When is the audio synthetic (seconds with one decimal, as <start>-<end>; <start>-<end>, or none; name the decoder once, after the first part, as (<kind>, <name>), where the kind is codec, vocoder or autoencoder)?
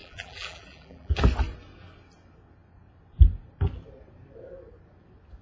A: 0.0-1.1 (vocoder, BigVGAN v2)